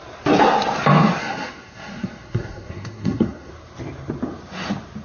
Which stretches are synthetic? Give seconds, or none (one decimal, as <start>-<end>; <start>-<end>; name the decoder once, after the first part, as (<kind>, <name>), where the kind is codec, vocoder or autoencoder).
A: 1.2-3.5 (codec, SNAC)